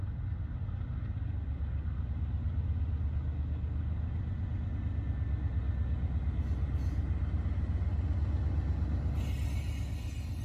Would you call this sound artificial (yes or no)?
no